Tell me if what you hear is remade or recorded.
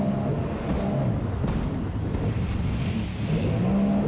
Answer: recorded